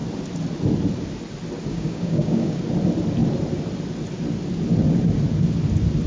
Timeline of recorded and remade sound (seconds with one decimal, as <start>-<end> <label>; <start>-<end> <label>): 0.0-1.7 recorded; 1.7-2.6 remade; 2.6-6.1 recorded